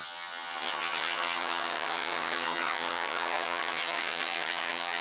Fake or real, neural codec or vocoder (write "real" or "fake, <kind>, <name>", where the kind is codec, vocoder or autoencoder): fake, vocoder, HiFi-GAN